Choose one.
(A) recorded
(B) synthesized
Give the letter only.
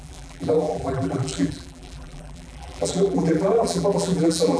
B